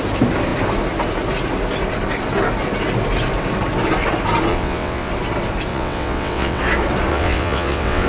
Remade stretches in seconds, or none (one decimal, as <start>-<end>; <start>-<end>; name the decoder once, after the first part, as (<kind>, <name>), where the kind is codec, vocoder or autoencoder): 4.5-5.1 (vocoder, WaveNeXt); 5.7-6.6; 7.1-8.1